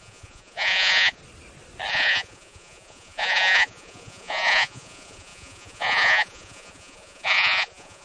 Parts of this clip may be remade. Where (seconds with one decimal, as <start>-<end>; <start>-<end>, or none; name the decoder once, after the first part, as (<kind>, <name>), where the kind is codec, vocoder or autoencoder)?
0.0-1.2 (vocoder, Vocos); 1.9-8.0